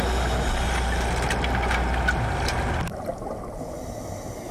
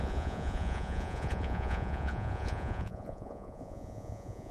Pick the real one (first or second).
first